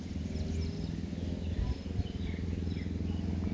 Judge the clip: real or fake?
real